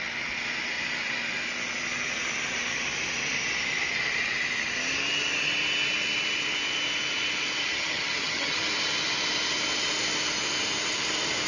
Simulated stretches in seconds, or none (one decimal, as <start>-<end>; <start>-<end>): 7.6-8.7